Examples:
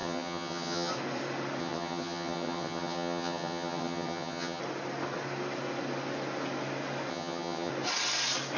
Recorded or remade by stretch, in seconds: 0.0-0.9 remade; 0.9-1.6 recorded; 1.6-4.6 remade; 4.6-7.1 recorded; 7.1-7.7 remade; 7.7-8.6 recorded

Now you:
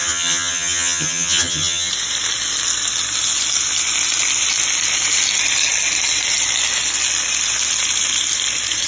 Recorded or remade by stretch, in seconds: 0.0-1.9 remade; 1.9-8.9 recorded

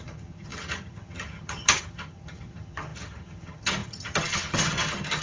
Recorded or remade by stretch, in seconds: 0.0-5.2 remade

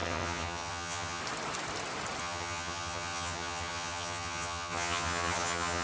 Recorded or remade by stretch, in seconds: 0.0-1.2 remade; 1.2-2.2 recorded; 2.2-5.8 remade

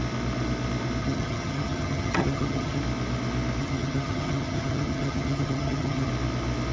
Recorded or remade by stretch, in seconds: 0.0-1.0 recorded; 1.0-2.8 remade; 2.8-3.6 recorded; 3.6-6.1 remade; 6.1-6.7 recorded

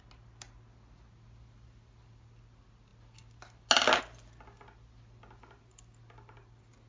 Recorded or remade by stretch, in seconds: 0.0-6.9 recorded